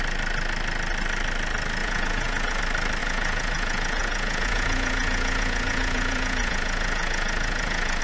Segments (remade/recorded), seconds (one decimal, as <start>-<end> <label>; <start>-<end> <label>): 0.0-1.8 recorded; 1.8-2.6 remade; 2.6-3.0 recorded; 3.0-8.0 remade